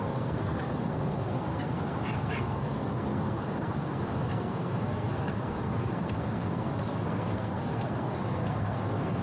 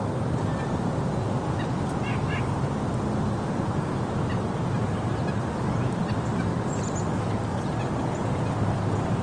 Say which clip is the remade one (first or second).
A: first